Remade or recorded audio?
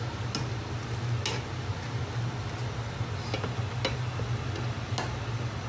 recorded